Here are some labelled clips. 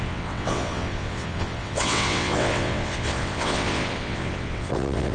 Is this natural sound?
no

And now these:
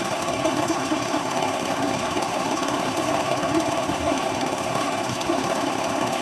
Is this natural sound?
no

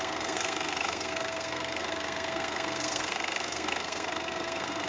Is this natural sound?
no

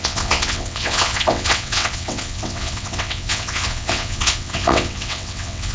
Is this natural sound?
no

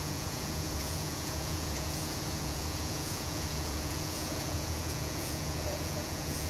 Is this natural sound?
no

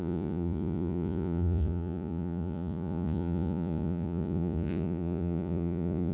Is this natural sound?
no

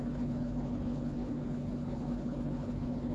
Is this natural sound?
no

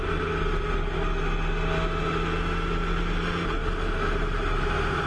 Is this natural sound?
yes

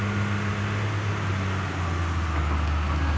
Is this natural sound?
yes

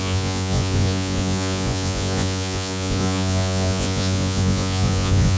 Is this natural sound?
no